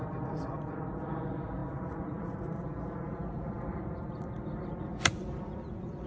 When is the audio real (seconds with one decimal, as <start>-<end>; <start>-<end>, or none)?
0.0-6.1